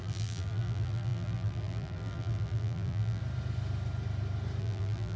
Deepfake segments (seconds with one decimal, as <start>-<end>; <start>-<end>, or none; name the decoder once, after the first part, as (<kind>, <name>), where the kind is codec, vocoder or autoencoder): 0.0-3.2 (vocoder, BigVGAN v2); 4.6-5.2